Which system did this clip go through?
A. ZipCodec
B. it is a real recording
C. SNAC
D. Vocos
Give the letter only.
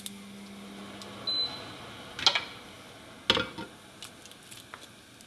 B